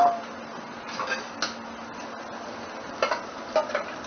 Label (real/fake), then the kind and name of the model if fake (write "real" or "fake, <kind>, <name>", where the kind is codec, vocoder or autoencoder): real